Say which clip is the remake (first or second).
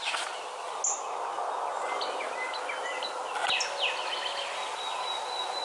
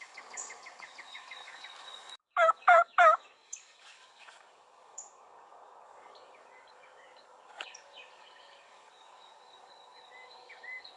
second